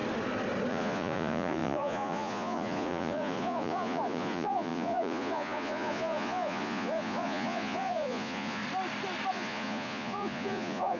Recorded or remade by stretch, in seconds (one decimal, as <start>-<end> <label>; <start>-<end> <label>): 0.0-0.7 recorded; 0.7-8.6 remade; 8.6-9.3 recorded; 9.3-11.0 remade